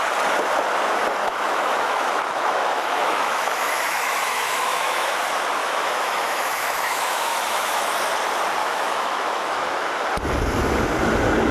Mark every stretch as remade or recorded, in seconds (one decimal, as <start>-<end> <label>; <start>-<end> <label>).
0.0-1.2 recorded; 1.2-5.1 remade; 5.1-5.6 recorded; 5.6-7.8 remade; 7.8-8.6 recorded; 8.6-9.9 remade; 9.9-11.5 recorded